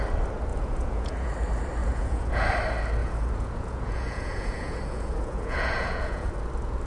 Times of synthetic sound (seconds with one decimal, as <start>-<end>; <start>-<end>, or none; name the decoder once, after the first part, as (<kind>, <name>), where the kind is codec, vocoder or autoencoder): 0.5-1.3 (vocoder, Vocos); 1.8-2.3; 3.0-6.3